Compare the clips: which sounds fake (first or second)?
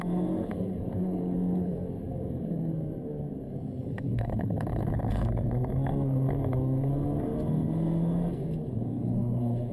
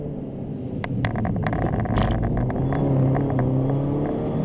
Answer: first